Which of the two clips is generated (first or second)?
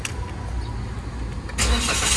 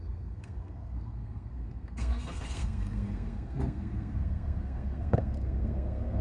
second